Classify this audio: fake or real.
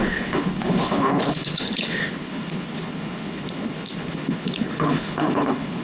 fake